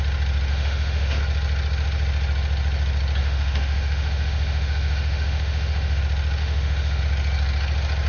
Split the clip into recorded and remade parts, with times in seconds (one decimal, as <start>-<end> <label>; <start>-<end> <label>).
0.0-0.5 recorded; 0.5-1.2 remade; 1.2-3.2 recorded; 3.2-6.0 remade; 6.0-6.4 recorded; 6.4-7.0 remade; 7.0-8.1 recorded